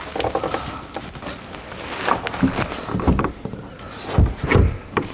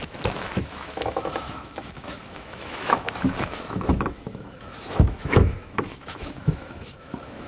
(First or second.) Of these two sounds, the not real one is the second